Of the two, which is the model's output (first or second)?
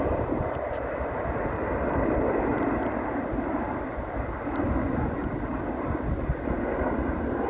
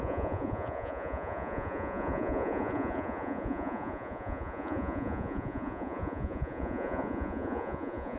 second